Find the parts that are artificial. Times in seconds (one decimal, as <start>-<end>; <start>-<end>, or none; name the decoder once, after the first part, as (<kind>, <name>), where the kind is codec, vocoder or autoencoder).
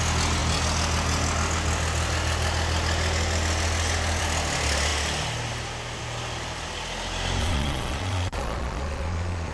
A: 7.4-9.5 (vocoder, Vocos)